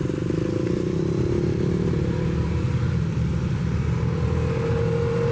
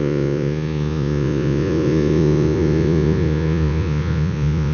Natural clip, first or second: first